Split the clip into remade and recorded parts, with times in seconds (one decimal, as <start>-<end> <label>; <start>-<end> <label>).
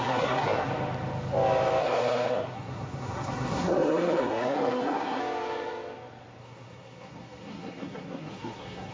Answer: 0.0-0.7 remade; 0.7-1.8 recorded; 1.8-5.2 remade; 5.2-6.4 recorded; 6.4-8.9 remade